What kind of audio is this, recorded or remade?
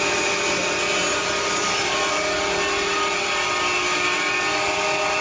recorded